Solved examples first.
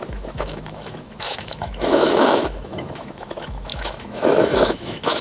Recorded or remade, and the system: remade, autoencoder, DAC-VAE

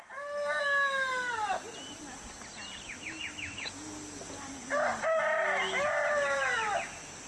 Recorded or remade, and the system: recorded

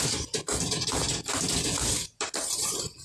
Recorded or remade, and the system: recorded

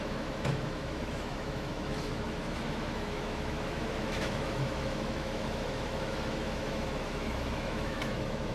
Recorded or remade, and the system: remade, autoencoder, DAC-VAE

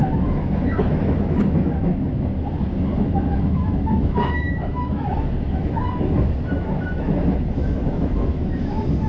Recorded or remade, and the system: remade, autoencoder, DAC-VAE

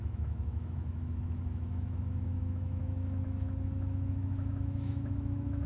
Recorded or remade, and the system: remade, autoencoder, DAC-VAE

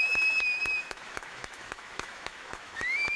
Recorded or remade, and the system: remade, autoencoder, DAC-VAE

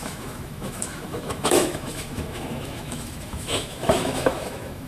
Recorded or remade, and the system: remade, autoencoder, DAC-VAE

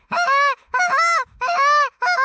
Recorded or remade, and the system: remade, autoencoder, DAC-VAE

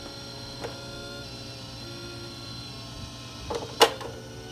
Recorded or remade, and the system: recorded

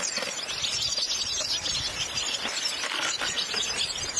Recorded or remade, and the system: recorded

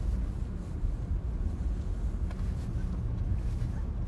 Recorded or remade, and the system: recorded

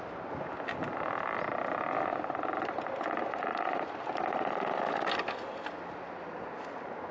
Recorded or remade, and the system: recorded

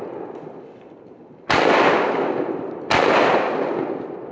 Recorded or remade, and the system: recorded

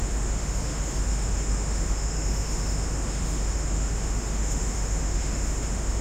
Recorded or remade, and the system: remade, autoencoder, DAC-VAE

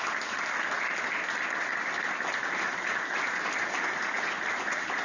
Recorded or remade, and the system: recorded